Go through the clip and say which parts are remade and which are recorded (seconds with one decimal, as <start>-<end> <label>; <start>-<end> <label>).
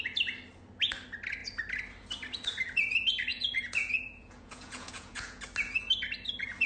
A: 0.0-3.3 recorded; 3.3-5.4 remade; 5.4-6.7 recorded